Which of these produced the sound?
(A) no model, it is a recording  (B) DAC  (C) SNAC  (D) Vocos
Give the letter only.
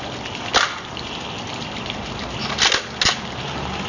A